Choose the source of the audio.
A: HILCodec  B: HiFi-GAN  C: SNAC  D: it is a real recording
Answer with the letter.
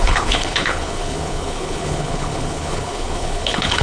A